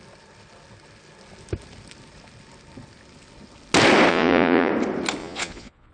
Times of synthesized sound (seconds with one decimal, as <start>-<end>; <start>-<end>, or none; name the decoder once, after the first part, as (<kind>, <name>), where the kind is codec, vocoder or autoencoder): 4.1-4.7 (vocoder, Vocos); 5.2-5.9